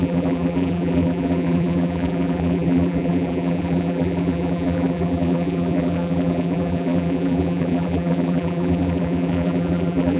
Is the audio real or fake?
fake